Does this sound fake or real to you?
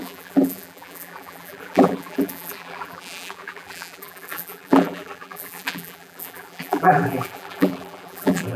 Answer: fake